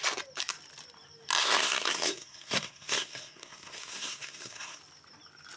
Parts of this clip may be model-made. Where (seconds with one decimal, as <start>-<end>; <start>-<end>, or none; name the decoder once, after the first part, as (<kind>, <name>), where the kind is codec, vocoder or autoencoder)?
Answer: 1.4-4.8 (codec, SNAC)